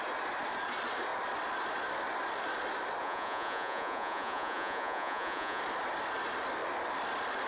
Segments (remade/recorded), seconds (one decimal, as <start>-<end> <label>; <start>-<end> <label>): 0.0-3.0 recorded; 3.0-5.6 remade; 5.6-7.5 recorded